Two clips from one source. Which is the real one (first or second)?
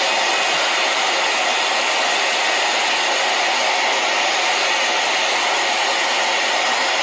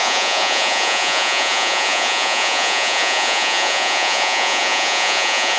first